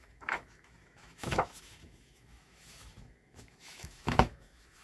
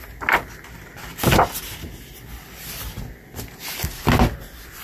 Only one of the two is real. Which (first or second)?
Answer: second